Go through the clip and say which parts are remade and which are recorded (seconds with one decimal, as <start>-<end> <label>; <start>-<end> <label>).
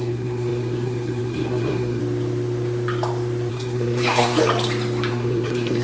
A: 0.0-2.0 remade; 2.0-3.5 recorded; 3.5-4.4 remade; 4.4-5.1 recorded; 5.1-5.8 remade